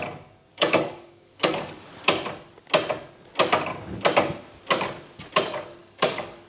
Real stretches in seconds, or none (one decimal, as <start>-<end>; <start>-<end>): 0.0-0.5; 1.8-5.8